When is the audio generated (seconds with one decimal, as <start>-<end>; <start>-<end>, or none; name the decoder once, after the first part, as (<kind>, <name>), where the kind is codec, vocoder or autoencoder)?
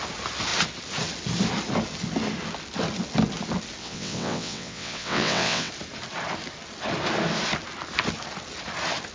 3.8-5.7 (vocoder, WaveNeXt)